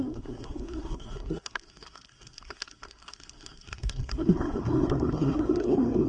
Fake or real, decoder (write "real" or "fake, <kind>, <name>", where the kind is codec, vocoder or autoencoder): fake, codec, SNAC